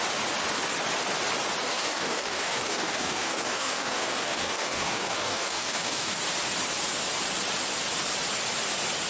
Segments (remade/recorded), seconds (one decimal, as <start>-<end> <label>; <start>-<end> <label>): 0.0-1.7 recorded; 1.7-6.2 remade; 6.2-9.1 recorded